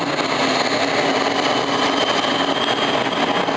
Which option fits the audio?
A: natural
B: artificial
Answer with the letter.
A